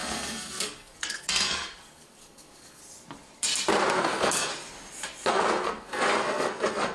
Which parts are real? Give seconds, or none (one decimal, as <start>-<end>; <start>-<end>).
2.8-3.9; 4.5-5.3